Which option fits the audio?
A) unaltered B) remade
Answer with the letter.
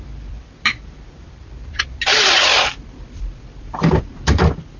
B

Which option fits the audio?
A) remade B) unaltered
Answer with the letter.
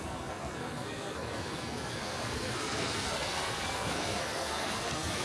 A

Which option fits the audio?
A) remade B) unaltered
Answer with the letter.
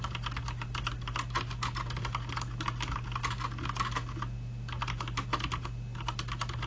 B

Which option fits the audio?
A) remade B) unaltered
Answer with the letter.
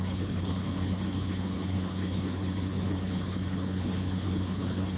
A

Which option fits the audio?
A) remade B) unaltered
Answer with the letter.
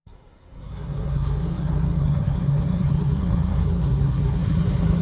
A